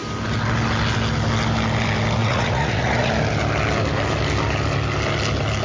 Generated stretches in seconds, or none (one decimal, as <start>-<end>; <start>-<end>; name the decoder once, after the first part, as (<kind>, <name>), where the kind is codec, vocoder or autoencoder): 2.2-3.1 (vocoder, Vocos)